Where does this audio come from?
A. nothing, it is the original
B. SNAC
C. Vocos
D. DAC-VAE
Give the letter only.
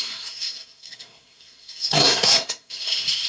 B